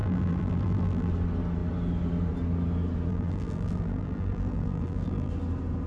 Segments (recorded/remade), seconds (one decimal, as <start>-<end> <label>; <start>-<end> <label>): 0.0-1.1 remade; 1.1-3.1 recorded; 3.1-5.3 remade; 5.3-5.9 recorded